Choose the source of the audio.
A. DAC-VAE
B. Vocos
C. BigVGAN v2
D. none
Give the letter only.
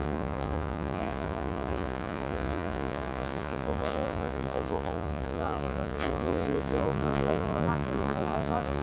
B